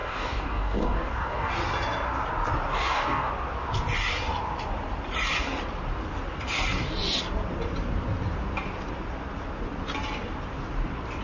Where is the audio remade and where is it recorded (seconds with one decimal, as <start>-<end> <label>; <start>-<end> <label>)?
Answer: 0.0-1.5 remade; 1.5-2.7 recorded; 2.7-3.3 remade; 3.3-11.2 recorded